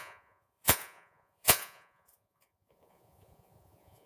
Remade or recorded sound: remade